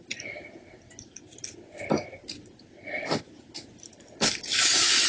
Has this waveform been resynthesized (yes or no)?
no